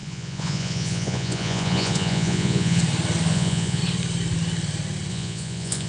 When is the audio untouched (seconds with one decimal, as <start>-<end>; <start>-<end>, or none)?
2.8-3.3; 3.8-5.1